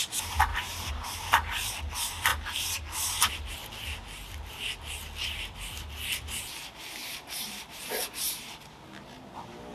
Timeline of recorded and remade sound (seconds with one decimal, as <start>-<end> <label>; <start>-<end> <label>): 0.0-0.5 recorded; 0.5-1.7 remade; 1.7-7.0 recorded; 7.0-8.4 remade; 8.4-9.7 recorded